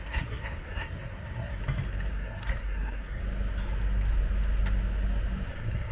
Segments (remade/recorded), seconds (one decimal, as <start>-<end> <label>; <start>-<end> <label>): 0.0-1.6 remade; 1.6-2.1 recorded; 2.1-3.2 remade; 3.2-5.5 recorded; 5.5-5.9 remade